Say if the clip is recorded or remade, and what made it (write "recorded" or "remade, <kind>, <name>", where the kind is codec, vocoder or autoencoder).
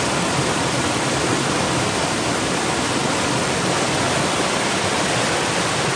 recorded